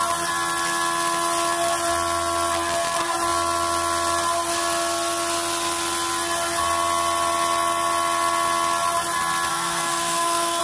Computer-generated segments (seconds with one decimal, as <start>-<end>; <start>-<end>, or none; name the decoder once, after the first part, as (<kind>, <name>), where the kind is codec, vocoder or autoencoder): 9.5-10.6 (codec, SNAC)